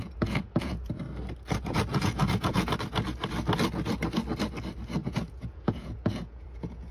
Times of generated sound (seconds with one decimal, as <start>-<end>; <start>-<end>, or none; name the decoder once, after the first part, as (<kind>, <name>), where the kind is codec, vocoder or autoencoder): 0.0-1.0 (vocoder, Vocos); 1.9-2.7; 5.0-6.9